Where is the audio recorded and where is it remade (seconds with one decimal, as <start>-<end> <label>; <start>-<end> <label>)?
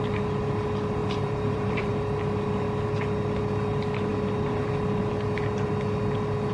0.0-1.0 recorded; 1.0-1.9 remade; 1.9-6.5 recorded